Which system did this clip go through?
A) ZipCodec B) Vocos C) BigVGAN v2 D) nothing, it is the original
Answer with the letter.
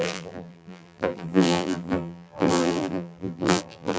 C